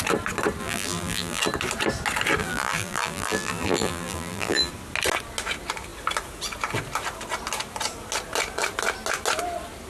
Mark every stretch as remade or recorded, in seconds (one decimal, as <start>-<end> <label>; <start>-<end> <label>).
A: 0.0-0.6 recorded; 0.6-1.4 remade; 1.4-2.4 recorded; 2.4-4.7 remade; 4.7-9.9 recorded